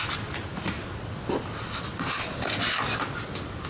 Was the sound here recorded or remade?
recorded